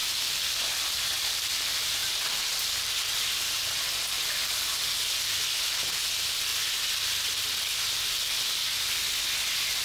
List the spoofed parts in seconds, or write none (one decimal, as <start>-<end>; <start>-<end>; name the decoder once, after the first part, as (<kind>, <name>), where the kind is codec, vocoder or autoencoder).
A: 2.0-3.1 (vocoder, BigVGAN v2)